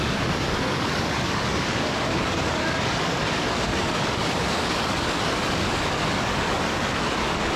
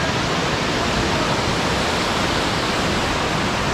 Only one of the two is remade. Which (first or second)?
first